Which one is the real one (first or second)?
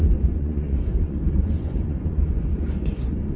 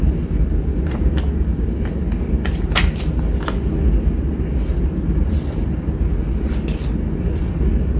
second